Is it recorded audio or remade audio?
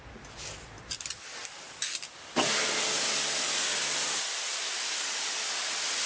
recorded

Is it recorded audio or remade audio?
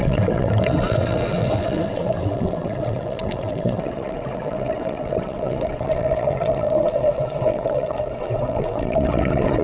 remade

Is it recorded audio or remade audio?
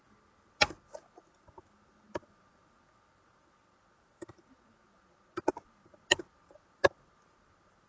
recorded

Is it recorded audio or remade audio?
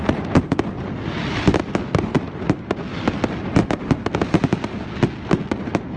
recorded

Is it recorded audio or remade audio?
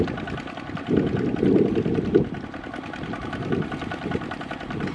recorded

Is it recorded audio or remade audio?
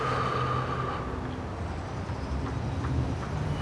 recorded